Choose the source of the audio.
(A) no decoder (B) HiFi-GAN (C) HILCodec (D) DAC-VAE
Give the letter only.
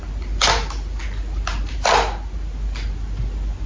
A